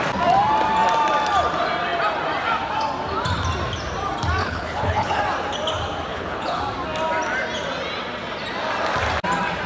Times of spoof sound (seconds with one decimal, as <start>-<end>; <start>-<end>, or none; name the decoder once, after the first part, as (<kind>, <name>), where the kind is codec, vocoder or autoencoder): 4.4-5.2 (codec, HILCodec); 6.1-6.6